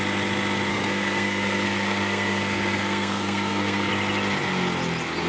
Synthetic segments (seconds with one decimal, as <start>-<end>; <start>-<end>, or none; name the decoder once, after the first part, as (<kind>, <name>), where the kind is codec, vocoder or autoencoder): 0.7-3.9 (codec, SNAC)